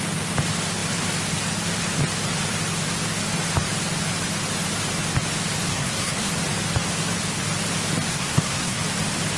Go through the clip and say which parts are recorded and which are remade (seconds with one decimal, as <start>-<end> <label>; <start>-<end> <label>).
0.0-5.7 recorded; 5.7-6.3 remade; 6.3-8.1 recorded; 8.1-8.8 remade; 8.8-9.4 recorded